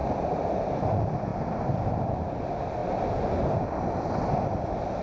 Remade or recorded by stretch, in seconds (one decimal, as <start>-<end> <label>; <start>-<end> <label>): 0.0-0.7 remade; 0.7-1.3 recorded; 1.3-2.4 remade; 2.4-2.8 recorded; 2.8-4.2 remade; 4.2-5.0 recorded